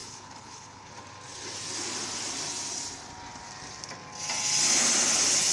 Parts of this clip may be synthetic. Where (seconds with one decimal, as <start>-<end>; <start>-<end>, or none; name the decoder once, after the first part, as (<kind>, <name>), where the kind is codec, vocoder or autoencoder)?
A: 0.0-0.9 (codec, HILCodec)

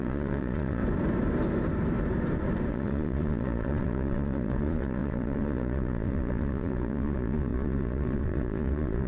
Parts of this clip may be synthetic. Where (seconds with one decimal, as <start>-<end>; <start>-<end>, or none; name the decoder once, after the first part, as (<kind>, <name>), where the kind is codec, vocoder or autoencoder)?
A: 0.0-0.8 (vocoder, Vocos); 2.7-9.1

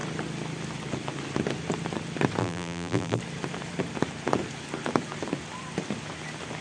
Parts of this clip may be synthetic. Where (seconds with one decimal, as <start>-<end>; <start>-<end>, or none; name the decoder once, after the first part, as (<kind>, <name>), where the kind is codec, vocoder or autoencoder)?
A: 2.4-3.2 (vocoder, BigVGAN v2)

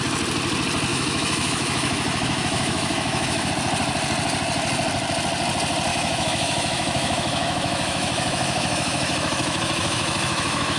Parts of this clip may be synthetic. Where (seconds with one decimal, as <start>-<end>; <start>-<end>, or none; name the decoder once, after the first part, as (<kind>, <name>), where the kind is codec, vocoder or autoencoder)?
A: 0.9-3.5 (autoencoder, DAC-VAE); 5.9-10.8

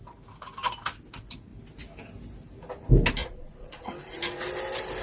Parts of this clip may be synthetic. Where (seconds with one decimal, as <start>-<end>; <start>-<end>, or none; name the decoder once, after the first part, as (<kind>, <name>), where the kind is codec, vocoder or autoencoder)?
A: 3.2-3.9 (vocoder, Vocos)

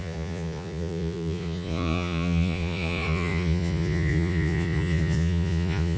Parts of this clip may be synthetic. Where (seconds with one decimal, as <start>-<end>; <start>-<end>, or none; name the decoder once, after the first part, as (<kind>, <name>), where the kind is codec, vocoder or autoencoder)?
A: 0.0-6.0 (vocoder, Vocos)

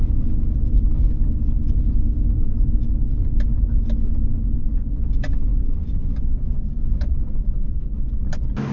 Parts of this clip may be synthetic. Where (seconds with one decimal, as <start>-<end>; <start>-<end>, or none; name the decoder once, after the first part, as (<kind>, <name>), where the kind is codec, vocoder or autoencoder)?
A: 5.5-6.8 (vocoder, BigVGAN v2)